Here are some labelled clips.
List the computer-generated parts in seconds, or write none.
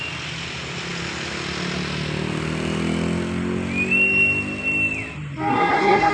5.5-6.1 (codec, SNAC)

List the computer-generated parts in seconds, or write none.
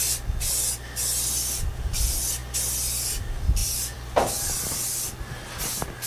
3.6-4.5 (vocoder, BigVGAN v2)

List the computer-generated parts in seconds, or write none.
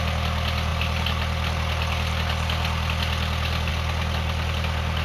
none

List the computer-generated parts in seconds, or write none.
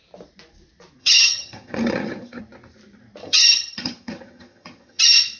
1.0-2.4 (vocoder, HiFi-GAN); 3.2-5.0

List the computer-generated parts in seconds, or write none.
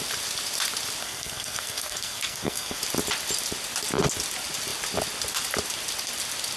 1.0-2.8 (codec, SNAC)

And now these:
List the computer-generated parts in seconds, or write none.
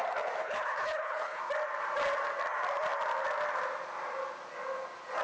0.4-1.4 (codec, HILCodec)